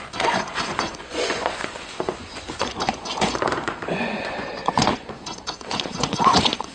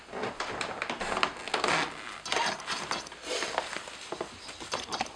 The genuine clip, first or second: second